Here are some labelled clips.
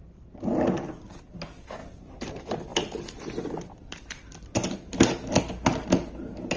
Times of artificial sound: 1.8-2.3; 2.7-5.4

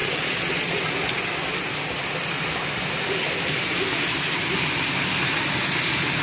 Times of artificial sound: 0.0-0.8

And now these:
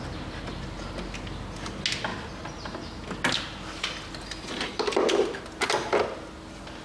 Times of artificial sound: none